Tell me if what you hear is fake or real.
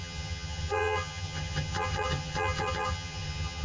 fake